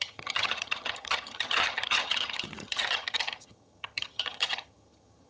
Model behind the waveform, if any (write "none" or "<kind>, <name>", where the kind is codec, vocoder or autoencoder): vocoder, HiFi-GAN